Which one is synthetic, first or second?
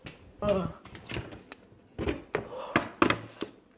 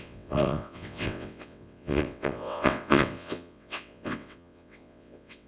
second